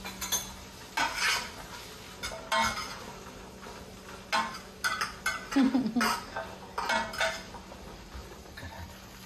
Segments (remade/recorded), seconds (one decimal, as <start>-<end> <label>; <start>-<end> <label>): 0.0-9.3 recorded